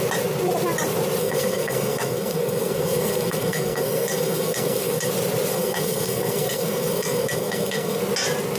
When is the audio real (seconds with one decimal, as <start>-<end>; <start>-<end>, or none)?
0.0-1.2; 5.1-5.5; 8.0-8.6